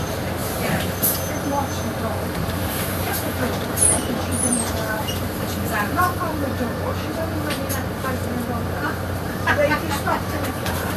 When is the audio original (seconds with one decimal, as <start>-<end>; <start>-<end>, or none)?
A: 0.4-2.2; 6.5-8.7